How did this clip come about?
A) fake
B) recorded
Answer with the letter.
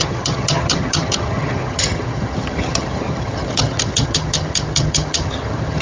A